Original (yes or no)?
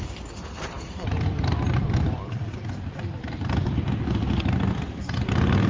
yes